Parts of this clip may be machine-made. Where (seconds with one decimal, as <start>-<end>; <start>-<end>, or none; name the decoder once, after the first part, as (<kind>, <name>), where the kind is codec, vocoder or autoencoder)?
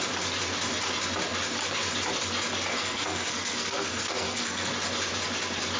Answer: 2.7-4.7 (codec, SNAC)